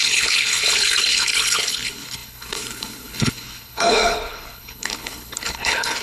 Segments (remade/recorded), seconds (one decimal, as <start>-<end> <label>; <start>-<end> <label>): 0.0-6.0 remade